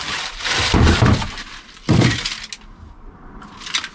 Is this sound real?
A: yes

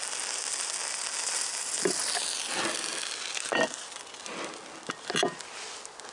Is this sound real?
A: yes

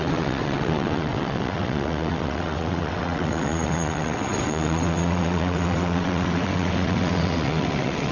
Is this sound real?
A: no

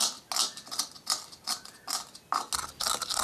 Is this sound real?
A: yes